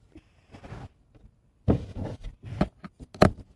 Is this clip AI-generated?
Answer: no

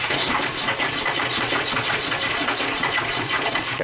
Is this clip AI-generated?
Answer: yes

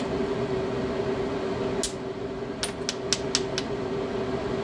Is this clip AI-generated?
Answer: no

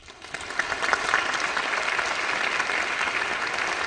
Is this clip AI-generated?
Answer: no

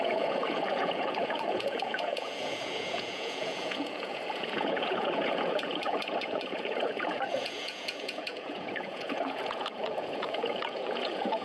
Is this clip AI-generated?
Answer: yes